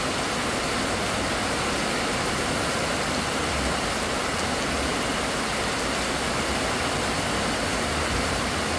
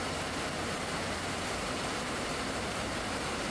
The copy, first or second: second